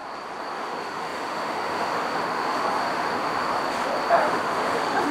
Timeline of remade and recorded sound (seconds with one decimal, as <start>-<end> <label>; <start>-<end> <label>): 0.0-0.5 recorded; 0.5-3.5 remade; 3.5-4.1 recorded; 4.1-5.1 remade